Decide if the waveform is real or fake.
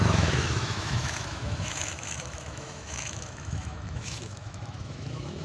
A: fake